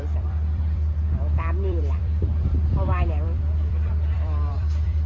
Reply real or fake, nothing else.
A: fake